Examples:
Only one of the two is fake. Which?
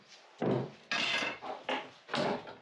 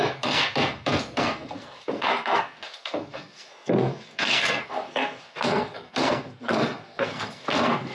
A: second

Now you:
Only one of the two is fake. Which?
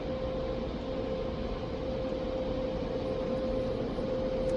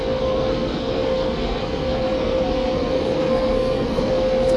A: second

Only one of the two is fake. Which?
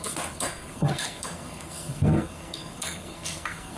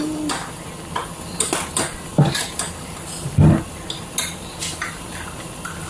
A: first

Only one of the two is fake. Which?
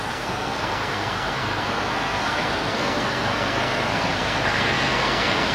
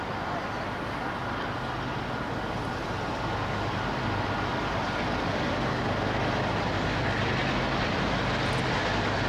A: first